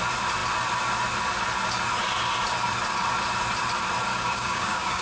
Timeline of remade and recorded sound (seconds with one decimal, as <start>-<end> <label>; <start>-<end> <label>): 0.0-4.1 recorded; 4.1-5.0 remade